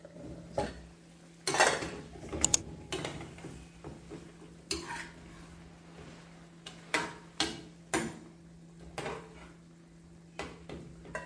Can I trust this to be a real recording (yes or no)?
yes